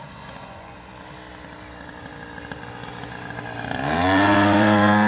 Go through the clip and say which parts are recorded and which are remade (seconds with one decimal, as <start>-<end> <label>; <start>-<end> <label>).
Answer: 0.0-0.9 remade; 0.9-4.0 recorded; 4.0-5.1 remade

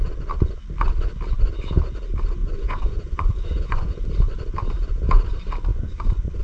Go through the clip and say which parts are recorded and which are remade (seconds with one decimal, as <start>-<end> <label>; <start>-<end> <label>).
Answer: 0.0-2.4 recorded; 2.4-3.9 remade; 3.9-5.7 recorded; 5.7-6.4 remade

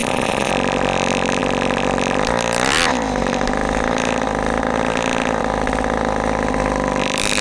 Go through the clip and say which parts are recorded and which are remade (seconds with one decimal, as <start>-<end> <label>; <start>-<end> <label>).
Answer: 0.0-0.5 remade; 0.5-7.4 recorded